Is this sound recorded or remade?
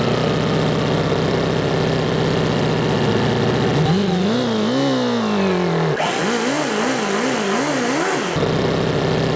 recorded